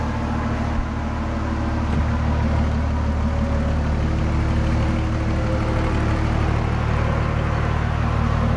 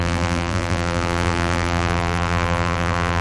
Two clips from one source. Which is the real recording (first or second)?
first